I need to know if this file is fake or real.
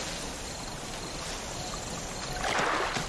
real